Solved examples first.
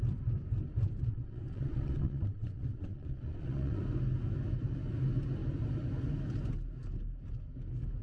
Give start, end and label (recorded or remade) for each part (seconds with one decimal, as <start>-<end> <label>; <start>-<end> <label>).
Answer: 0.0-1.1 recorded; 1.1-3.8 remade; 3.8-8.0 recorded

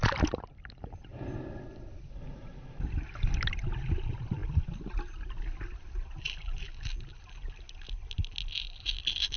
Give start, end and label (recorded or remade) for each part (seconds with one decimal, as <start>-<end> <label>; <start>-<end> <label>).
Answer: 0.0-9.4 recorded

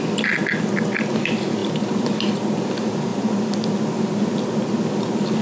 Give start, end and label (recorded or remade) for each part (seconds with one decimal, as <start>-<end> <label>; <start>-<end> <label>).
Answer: 0.0-1.6 recorded; 1.6-2.6 remade; 2.6-5.4 recorded

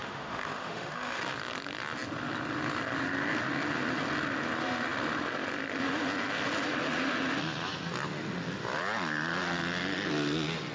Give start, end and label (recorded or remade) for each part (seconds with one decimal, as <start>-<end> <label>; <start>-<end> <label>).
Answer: 0.0-1.2 remade; 1.2-10.7 recorded

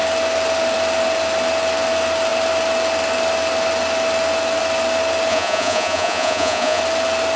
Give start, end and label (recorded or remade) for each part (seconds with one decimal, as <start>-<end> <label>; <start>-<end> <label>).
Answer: 0.0-5.3 recorded; 5.3-6.8 remade; 6.8-7.4 recorded

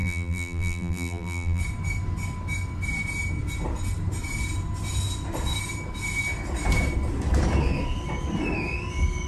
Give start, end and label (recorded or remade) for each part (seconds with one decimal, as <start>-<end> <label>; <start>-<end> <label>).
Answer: 0.0-1.6 remade; 1.6-9.3 recorded

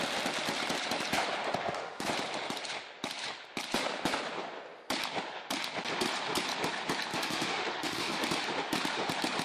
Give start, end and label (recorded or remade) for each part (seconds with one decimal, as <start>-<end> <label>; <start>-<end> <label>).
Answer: 0.0-1.6 recorded; 1.6-2.1 remade; 2.1-7.1 recorded; 7.1-8.2 remade; 8.2-9.4 recorded

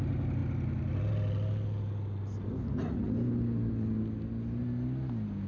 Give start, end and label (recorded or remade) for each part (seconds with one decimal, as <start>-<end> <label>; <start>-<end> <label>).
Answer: 0.0-5.5 recorded